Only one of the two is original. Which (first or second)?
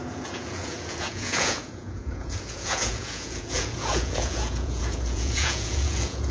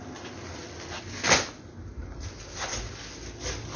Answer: second